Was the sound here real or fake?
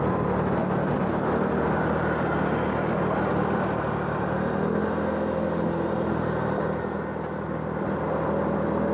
real